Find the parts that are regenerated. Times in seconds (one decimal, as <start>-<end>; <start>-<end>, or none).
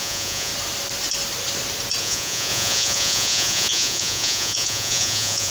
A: 0.0-0.5; 2.0-5.5